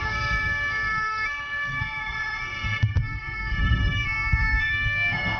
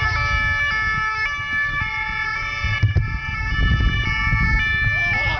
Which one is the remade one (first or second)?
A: first